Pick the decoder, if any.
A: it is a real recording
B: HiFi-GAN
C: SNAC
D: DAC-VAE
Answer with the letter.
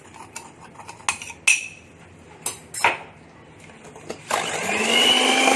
A